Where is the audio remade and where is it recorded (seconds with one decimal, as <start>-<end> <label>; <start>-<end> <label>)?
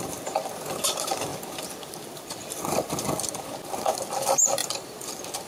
0.0-4.6 recorded; 4.6-5.1 remade; 5.1-5.5 recorded